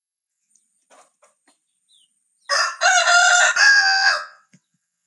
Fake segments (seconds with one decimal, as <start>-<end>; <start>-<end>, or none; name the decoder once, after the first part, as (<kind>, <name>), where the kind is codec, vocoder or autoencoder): 0.0-0.5 (vocoder, WaveNeXt); 3.6-5.1